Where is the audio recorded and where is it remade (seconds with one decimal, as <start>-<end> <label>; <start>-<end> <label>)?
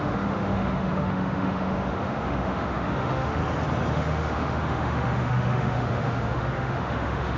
0.0-3.4 remade; 3.4-3.9 recorded; 3.9-7.4 remade